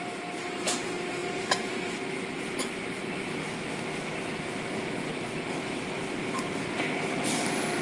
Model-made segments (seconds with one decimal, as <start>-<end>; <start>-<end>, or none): none